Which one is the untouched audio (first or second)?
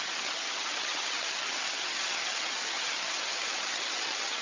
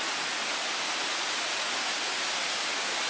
second